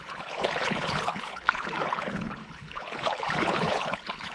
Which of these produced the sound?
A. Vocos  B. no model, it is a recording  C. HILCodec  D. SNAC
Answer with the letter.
C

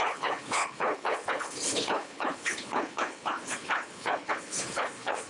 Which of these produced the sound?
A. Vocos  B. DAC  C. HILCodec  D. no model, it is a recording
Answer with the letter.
C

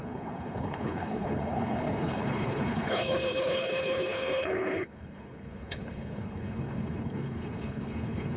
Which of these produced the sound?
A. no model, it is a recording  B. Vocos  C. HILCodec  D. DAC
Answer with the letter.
C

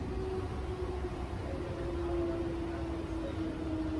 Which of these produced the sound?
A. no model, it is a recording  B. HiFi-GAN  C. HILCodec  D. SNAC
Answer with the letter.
A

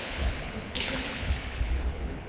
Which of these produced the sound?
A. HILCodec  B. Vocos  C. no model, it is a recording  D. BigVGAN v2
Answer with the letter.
A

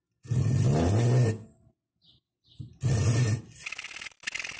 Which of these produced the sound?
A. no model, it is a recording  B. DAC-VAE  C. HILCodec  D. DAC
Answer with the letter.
A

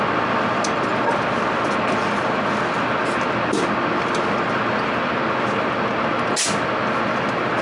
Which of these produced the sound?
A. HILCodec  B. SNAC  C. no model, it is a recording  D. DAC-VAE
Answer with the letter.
C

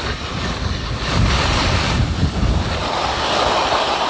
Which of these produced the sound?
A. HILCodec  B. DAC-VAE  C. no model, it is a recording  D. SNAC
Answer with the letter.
C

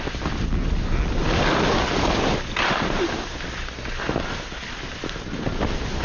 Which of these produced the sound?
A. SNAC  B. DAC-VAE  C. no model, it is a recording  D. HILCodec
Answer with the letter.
C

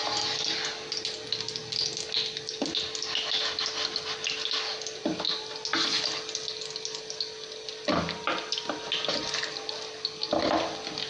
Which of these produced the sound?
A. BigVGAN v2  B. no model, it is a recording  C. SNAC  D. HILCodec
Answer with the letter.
B